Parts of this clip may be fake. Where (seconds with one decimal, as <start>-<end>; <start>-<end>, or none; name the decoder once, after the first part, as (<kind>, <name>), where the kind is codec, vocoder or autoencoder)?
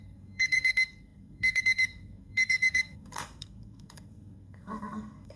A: 0.0-5.4 (codec, SNAC)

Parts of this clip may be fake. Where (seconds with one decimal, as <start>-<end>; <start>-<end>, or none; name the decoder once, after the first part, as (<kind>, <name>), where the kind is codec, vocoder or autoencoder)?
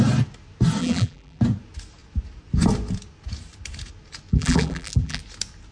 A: 0.8-1.4 (vocoder, BigVGAN v2); 4.3-5.2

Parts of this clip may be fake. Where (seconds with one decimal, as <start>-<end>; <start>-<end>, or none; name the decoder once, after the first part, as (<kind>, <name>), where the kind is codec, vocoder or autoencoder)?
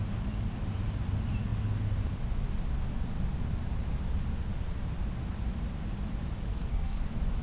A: 6.5-7.0 (codec, SNAC)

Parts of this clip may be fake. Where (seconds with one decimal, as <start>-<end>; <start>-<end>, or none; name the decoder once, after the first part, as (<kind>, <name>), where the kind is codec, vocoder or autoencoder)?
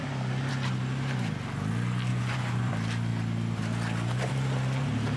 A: 2.1-2.7 (vocoder, Vocos)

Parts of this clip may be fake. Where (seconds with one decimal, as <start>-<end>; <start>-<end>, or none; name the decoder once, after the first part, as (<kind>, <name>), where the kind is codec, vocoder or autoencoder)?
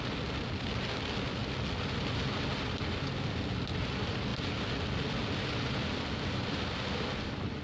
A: none